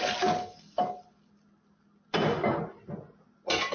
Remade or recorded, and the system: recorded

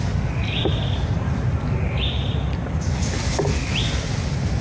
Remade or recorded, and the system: recorded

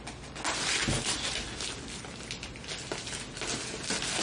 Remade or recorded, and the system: recorded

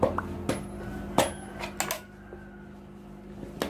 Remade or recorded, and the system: recorded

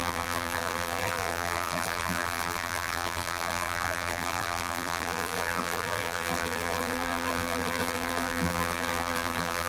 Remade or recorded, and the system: remade, vocoder, BigVGAN v2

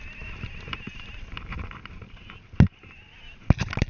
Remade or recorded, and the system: recorded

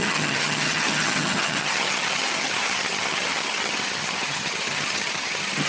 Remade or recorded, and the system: remade, vocoder, HiFi-GAN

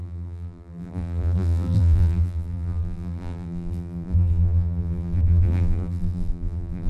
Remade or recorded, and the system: remade, vocoder, BigVGAN v2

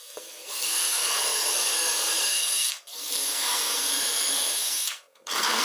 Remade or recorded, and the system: remade, codec, SNAC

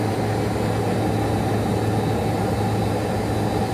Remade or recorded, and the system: recorded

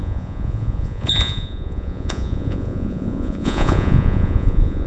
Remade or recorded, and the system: remade, vocoder, Vocos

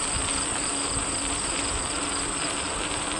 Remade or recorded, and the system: recorded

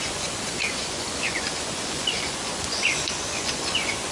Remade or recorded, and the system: remade, vocoder, Vocos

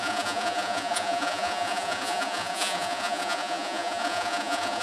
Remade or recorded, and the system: remade, vocoder, Vocos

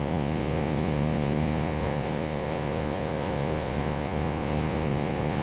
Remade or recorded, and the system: remade, vocoder, Vocos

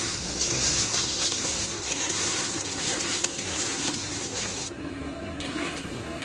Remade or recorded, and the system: remade, codec, SNAC